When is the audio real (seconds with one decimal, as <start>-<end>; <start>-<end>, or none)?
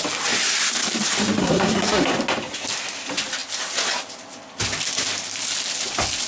0.0-1.4; 2.1-6.3